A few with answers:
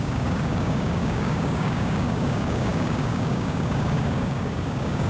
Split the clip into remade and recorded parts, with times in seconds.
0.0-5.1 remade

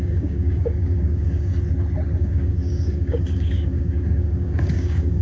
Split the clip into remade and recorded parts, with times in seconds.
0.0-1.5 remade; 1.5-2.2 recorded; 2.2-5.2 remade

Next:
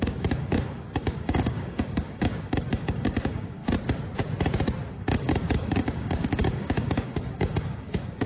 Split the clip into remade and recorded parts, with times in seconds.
0.0-3.6 remade; 3.6-4.9 recorded; 4.9-8.3 remade

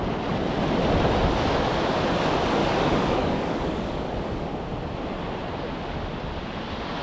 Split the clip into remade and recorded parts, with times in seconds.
0.0-2.6 recorded; 2.6-4.5 remade; 4.5-7.0 recorded

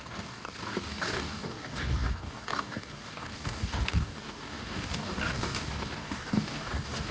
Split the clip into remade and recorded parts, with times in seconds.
0.0-7.1 remade

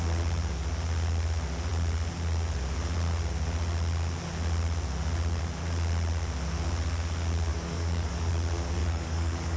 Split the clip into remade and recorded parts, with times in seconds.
0.0-7.5 recorded; 7.5-8.3 remade; 8.3-8.8 recorded; 8.8-9.6 remade

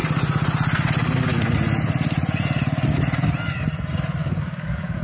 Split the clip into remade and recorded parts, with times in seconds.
0.0-4.2 recorded; 4.2-5.0 remade

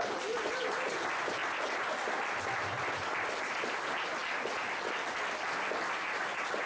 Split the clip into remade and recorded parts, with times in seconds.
0.0-6.7 recorded